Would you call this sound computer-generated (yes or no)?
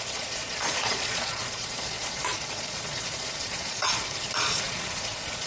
yes